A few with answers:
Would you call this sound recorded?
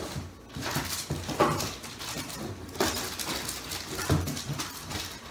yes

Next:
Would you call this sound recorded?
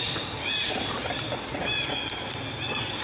yes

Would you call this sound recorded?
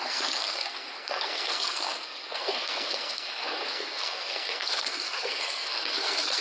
no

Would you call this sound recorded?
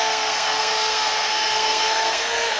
no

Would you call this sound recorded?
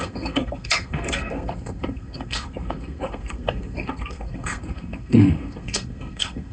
no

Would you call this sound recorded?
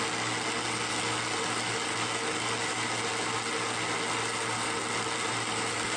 yes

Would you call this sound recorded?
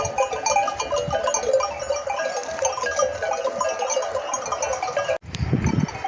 yes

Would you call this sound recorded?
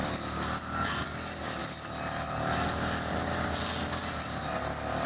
yes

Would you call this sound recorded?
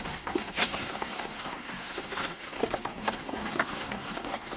no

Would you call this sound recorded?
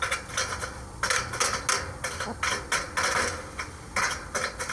yes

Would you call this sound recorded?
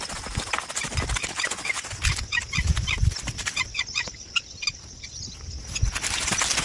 yes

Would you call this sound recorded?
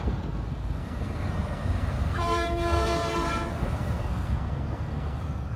no